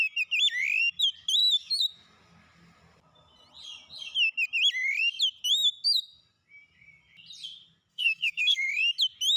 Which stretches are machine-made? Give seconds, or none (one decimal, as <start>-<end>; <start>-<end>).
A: 7.9-8.7